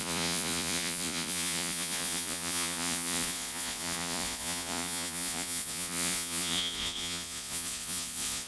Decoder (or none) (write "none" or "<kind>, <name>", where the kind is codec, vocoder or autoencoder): vocoder, Vocos